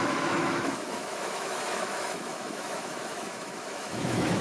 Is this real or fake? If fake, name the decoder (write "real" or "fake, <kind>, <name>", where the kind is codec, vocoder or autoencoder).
fake, autoencoder, DAC-VAE